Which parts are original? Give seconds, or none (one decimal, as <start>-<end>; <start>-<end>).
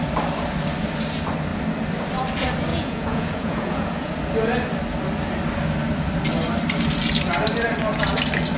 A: 0.0-2.7; 4.1-8.6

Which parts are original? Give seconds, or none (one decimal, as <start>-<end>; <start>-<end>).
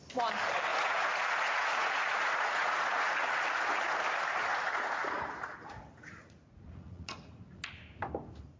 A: 0.0-0.7; 3.1-4.5; 7.6-8.6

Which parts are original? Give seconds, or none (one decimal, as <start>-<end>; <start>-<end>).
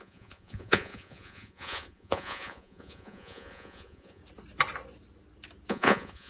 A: 4.2-5.7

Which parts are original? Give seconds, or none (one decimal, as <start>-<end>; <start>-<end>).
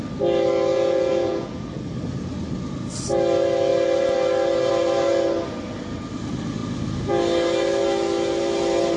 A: 0.0-0.7; 1.8-9.0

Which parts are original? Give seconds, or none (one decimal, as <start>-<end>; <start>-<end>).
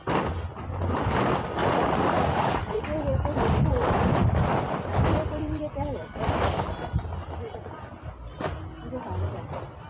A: 0.0-1.6; 2.8-9.9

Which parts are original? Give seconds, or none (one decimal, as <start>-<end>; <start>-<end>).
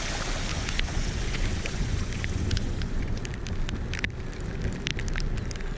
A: 0.0-0.5; 3.2-5.8